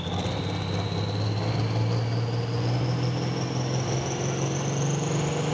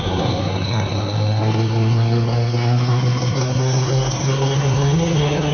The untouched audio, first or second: first